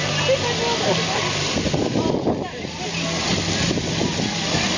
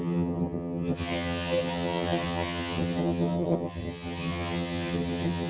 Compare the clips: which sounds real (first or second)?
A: first